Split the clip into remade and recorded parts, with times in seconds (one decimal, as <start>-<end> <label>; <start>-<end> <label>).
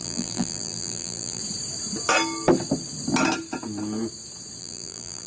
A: 0.0-1.4 remade; 1.4-4.6 recorded; 4.6-5.3 remade